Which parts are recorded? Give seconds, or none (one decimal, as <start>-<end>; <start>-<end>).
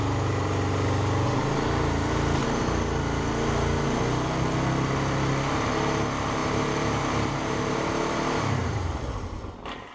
0.0-6.4; 9.0-9.9